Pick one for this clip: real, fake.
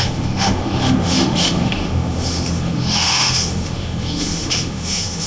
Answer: fake